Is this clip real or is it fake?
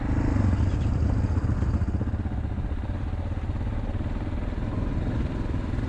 real